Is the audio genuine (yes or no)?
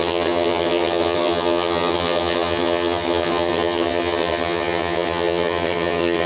no